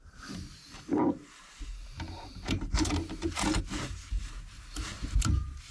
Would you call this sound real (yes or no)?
no